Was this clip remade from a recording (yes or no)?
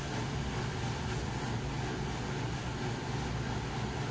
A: no